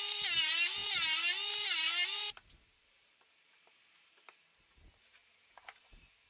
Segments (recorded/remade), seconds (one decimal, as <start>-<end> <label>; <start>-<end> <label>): 0.0-6.3 remade